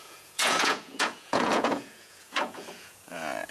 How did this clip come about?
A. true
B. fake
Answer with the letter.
B